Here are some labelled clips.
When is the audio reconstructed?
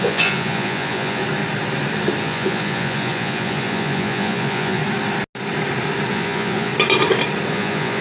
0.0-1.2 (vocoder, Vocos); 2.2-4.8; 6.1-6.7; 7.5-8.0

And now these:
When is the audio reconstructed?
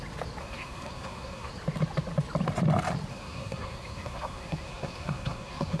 0.4-1.5 (codec, SNAC); 3.1-5.8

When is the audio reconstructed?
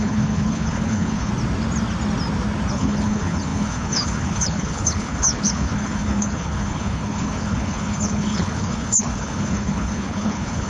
0.0-1.3 (codec, HILCodec); 2.7-10.7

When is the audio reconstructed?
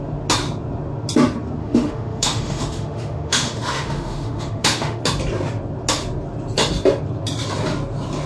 1.6-5.0 (autoencoder, DAC-VAE)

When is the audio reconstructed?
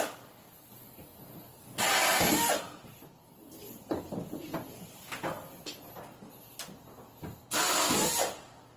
none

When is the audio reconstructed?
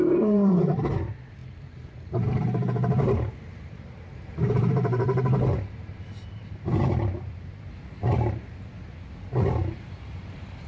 0.0-10.7 (vocoder, BigVGAN v2)